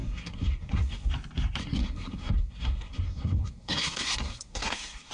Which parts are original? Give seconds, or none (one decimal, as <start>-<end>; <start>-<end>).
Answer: 1.1-1.6